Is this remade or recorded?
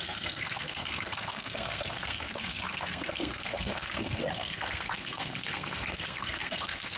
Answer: remade